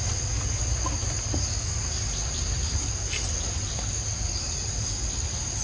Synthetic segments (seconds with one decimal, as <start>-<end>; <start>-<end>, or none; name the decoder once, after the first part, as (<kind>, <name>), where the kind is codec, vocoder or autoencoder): none